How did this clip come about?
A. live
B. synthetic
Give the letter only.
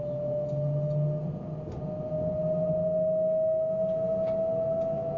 A